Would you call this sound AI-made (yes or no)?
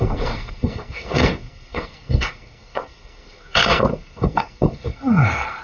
yes